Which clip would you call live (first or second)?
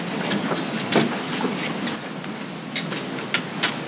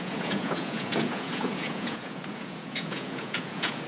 first